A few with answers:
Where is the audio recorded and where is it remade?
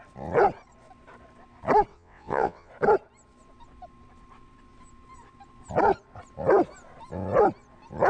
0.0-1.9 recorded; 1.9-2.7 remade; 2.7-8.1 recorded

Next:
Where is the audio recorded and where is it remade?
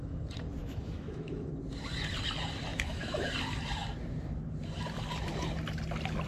0.0-0.6 recorded; 0.6-1.5 remade; 1.5-2.7 recorded; 2.7-3.3 remade; 3.3-6.3 recorded